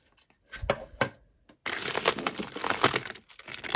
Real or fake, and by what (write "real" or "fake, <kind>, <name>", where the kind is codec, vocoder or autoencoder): real